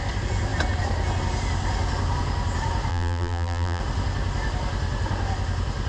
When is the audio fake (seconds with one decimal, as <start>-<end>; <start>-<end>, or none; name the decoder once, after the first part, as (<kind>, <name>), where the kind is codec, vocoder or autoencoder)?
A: 2.9-3.8 (vocoder, BigVGAN v2)